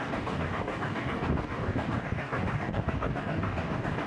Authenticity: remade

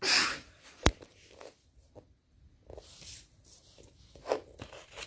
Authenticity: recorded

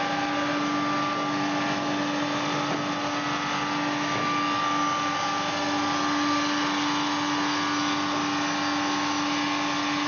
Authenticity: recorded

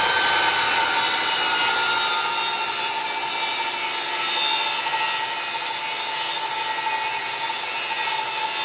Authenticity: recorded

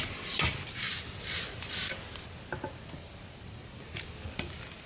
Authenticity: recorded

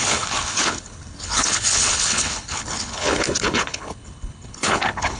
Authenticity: remade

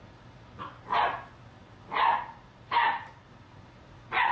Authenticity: recorded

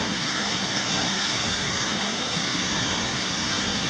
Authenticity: remade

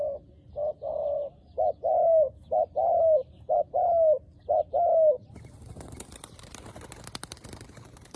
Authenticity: recorded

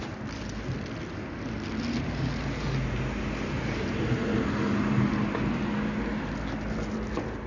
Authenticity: recorded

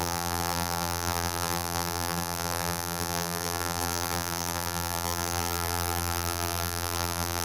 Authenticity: remade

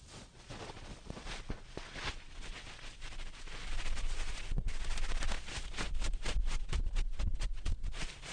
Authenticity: remade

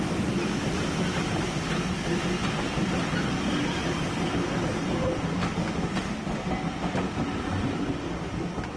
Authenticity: recorded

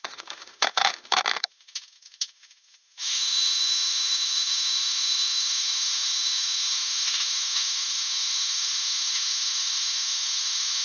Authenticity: remade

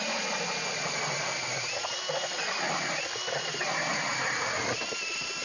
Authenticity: recorded